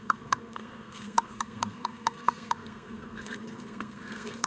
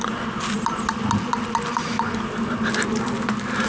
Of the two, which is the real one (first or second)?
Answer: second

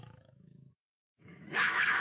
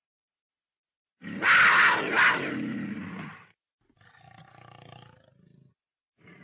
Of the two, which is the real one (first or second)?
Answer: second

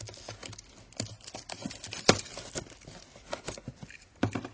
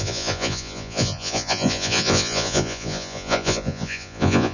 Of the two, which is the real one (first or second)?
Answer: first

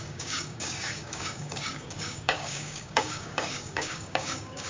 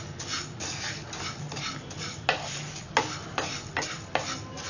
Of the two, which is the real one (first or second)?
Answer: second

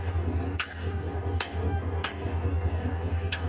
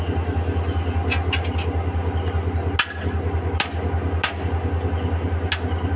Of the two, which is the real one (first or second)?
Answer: second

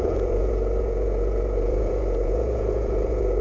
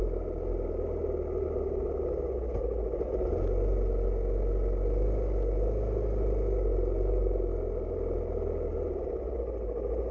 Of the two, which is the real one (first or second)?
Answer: second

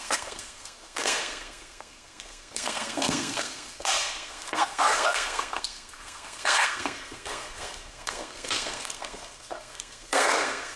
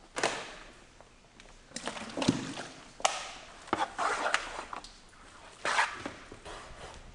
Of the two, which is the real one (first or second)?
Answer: second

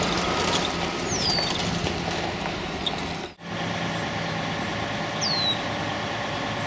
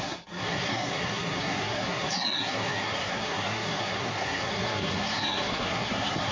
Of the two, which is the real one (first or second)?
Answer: first